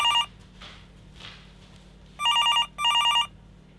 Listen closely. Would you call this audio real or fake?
real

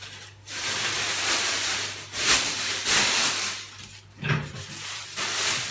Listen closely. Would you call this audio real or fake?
fake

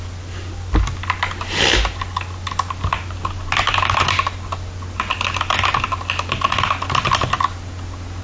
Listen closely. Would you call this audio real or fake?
real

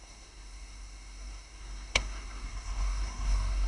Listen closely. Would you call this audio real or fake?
fake